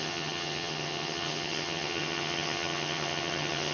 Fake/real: fake